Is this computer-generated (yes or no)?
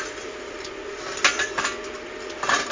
yes